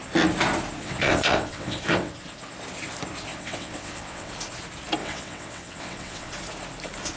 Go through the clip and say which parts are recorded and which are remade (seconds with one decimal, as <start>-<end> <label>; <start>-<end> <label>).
0.0-0.8 recorded; 0.8-2.1 remade; 2.1-3.3 recorded; 3.3-4.3 remade; 4.3-5.0 recorded; 5.0-6.3 remade; 6.3-7.2 recorded